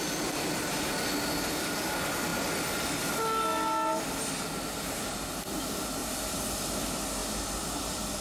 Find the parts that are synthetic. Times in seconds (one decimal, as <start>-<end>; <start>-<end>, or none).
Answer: 6.0-6.5; 7.2-8.2